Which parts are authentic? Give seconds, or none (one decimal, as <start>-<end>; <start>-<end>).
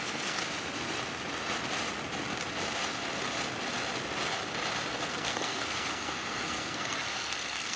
0.4-5.1